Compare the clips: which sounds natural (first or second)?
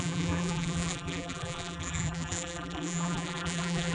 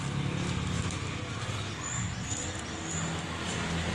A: second